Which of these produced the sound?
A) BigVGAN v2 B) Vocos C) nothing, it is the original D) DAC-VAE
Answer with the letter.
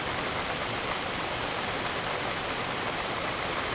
C